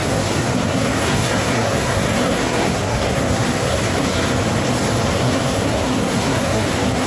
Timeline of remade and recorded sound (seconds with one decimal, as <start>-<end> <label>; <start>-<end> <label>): 0.0-4.3 remade; 4.3-5.1 recorded; 5.1-7.1 remade